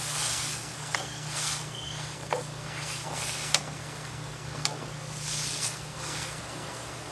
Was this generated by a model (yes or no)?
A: yes